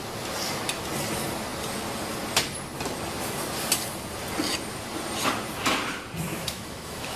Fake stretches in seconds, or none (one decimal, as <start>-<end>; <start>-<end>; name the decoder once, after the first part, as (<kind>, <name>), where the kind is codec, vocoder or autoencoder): 6.3-7.2 (autoencoder, DAC-VAE)